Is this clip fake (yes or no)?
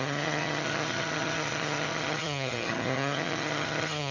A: yes